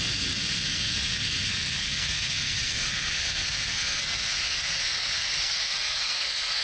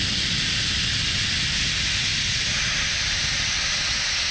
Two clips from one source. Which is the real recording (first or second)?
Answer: second